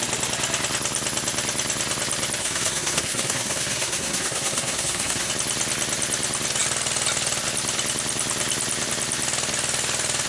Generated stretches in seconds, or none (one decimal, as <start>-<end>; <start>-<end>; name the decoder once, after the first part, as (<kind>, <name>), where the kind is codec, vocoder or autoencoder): 2.4-5.3 (codec, SNAC)